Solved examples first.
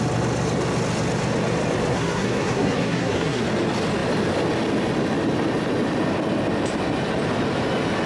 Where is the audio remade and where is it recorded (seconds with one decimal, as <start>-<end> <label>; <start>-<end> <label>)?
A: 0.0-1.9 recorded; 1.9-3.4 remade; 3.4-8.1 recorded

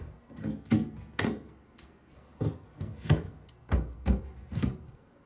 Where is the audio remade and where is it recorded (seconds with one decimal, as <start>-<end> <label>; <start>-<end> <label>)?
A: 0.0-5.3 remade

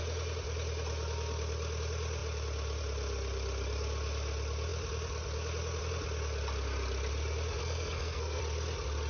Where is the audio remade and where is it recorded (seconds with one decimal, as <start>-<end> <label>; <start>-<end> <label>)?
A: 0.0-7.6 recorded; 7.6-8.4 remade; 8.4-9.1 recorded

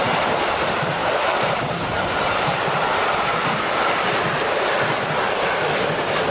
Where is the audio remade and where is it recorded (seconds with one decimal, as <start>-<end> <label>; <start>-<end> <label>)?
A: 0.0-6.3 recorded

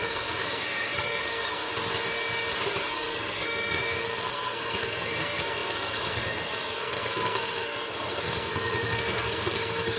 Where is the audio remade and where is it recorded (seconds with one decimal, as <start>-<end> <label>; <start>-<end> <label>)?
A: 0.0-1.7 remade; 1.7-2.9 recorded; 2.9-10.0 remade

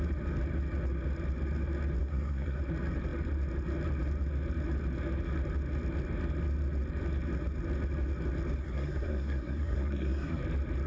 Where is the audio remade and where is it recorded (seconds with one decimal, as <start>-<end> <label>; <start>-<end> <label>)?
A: 0.0-2.0 recorded; 2.0-2.6 remade; 2.6-8.6 recorded; 8.6-10.4 remade; 10.4-10.9 recorded